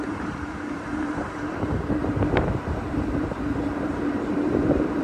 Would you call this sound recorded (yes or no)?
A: no